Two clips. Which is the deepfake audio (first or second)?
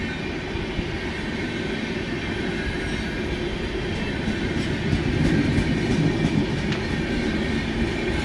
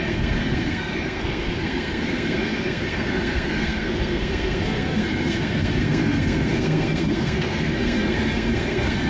second